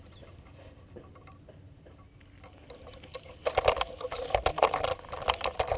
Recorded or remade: recorded